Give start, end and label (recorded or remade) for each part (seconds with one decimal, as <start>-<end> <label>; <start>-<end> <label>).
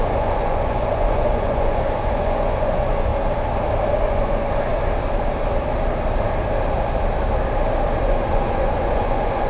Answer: 0.0-3.1 remade; 3.1-3.9 recorded; 3.9-4.7 remade; 4.7-8.0 recorded; 8.0-9.5 remade